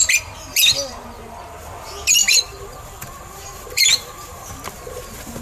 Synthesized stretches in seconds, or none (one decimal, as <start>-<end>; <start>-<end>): 2.2-4.5